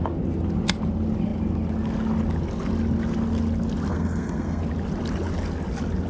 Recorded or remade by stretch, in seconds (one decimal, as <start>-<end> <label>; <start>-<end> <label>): 0.0-3.9 recorded; 3.9-4.6 remade; 4.6-6.1 recorded